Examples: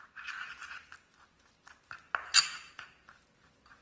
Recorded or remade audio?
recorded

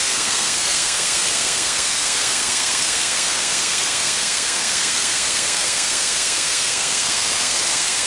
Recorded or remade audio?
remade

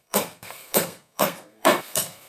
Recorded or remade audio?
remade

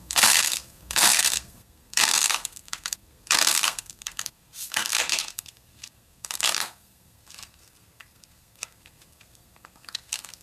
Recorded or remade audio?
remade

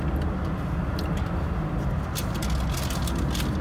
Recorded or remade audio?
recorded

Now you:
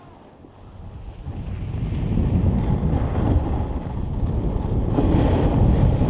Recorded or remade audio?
recorded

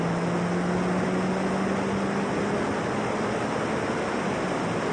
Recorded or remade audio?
recorded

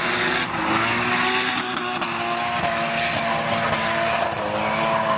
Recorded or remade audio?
recorded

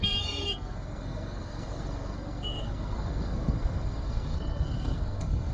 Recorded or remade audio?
remade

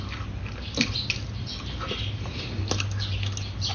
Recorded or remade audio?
recorded